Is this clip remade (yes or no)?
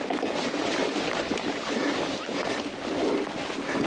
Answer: no